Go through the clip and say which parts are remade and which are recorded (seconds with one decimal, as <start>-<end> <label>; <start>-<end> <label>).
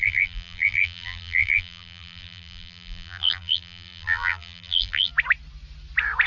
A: 0.0-5.1 remade; 5.1-6.3 recorded